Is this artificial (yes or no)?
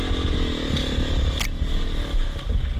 no